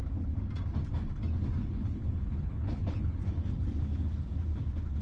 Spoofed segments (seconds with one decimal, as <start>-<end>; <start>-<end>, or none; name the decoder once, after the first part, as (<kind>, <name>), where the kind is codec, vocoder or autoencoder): 1.6-3.2 (codec, HILCodec)